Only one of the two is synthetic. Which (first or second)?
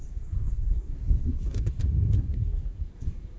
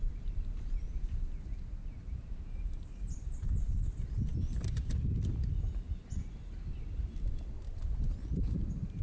first